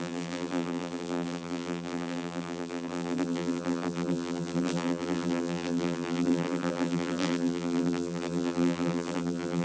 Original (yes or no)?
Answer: no